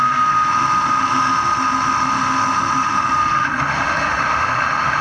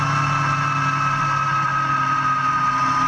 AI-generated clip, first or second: first